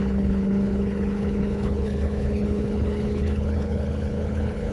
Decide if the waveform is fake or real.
fake